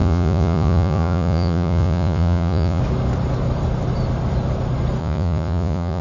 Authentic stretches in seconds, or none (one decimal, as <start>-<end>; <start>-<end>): 2.8-5.0